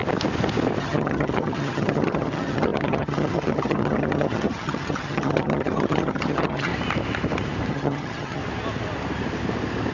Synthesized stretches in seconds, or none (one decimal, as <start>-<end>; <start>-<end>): 0.8-6.7; 7.7-8.4